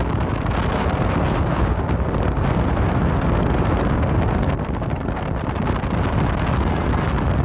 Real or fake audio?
real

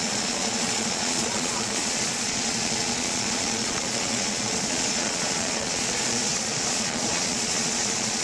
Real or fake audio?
fake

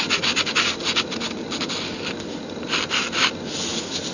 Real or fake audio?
real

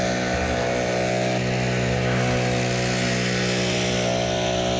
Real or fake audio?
real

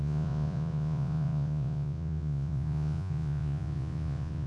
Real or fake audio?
fake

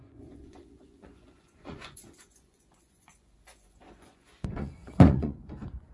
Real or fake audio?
fake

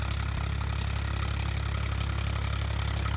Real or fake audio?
real